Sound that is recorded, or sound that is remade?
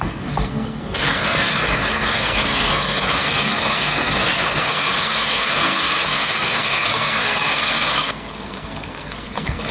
remade